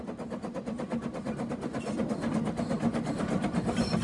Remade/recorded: recorded